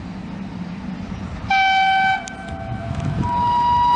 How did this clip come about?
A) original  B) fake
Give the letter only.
A